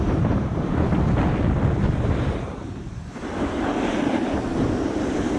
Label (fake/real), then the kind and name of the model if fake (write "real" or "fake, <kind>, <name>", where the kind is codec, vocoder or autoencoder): fake, vocoder, BigVGAN v2